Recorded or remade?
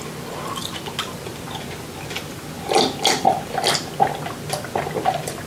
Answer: recorded